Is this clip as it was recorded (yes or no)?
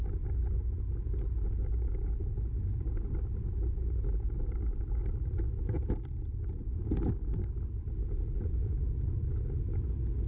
yes